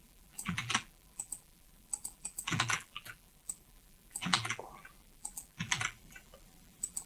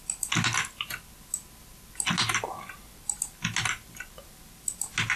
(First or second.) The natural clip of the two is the second